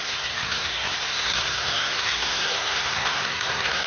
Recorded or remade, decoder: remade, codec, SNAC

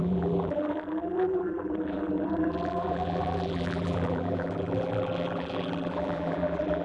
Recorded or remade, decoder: remade, vocoder, BigVGAN v2